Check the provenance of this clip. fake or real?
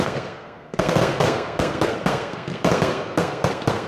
fake